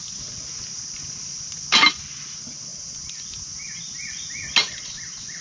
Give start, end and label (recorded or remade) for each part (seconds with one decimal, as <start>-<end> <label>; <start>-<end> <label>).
0.0-5.4 recorded